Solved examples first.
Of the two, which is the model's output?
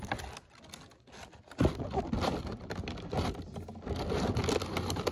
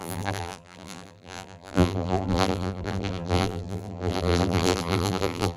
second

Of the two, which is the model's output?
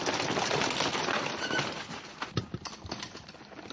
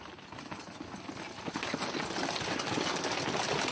first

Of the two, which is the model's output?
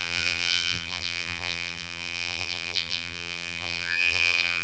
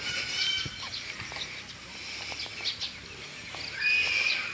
first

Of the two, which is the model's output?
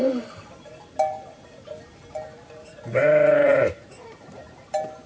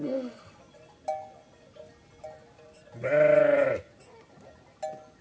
first